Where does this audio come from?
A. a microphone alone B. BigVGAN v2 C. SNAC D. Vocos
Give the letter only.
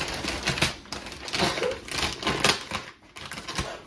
A